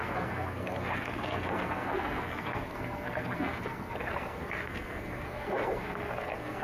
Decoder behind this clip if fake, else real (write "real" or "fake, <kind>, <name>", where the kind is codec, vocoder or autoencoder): fake, codec, SNAC